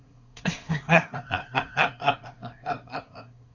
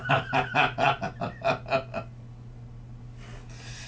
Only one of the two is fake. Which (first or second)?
first